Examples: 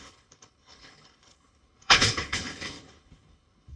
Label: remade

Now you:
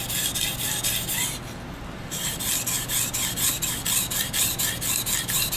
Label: recorded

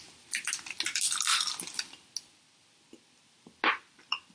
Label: recorded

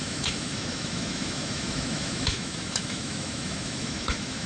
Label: remade